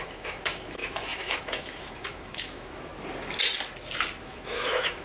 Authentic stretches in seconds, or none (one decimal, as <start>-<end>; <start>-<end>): 2.9-4.2